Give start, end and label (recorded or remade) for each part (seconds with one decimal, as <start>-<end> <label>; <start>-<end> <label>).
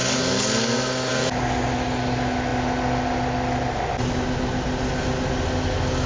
0.0-6.1 recorded